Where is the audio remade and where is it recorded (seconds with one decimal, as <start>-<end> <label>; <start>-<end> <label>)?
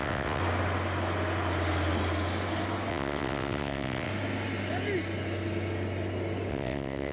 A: 0.0-0.4 remade; 0.4-2.9 recorded; 2.9-4.1 remade; 4.1-6.5 recorded; 6.5-7.1 remade